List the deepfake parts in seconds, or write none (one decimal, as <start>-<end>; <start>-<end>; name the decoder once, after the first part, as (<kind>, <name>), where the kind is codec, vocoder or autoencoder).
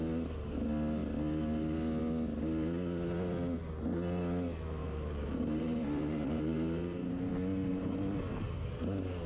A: 4.8-7.3 (vocoder, BigVGAN v2); 7.7-8.8